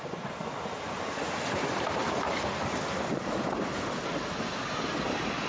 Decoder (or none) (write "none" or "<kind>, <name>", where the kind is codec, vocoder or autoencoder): none